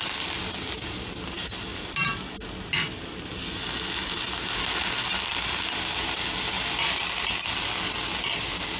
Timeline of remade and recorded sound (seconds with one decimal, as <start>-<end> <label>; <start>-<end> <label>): 0.0-8.8 recorded